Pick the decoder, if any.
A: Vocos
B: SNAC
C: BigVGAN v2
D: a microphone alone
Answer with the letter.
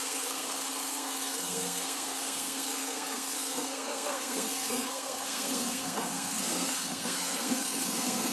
B